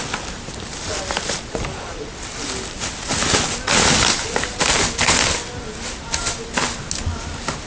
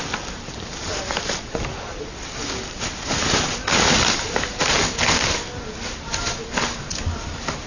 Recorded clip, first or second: first